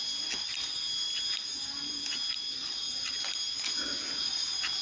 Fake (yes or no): no